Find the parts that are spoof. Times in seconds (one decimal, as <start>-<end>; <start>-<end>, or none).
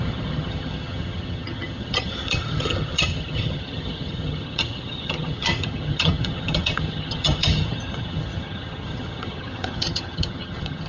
0.0-10.9